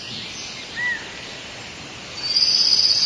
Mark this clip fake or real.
real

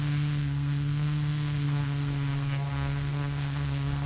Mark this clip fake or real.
fake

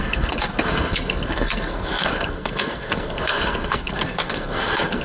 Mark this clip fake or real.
fake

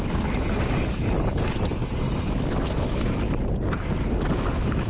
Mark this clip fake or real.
real